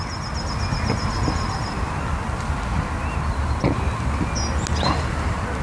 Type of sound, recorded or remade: recorded